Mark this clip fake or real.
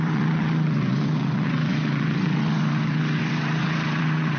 fake